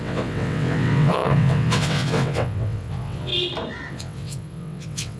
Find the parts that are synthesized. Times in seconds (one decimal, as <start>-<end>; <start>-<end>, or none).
0.0-3.3; 3.9-5.2